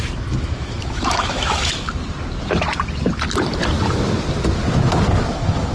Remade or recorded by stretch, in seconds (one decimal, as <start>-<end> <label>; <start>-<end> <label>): 0.0-1.9 remade; 1.9-5.3 recorded; 5.3-5.7 remade